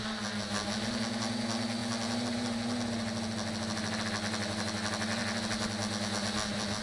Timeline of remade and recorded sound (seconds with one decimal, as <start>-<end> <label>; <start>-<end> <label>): 0.0-6.8 recorded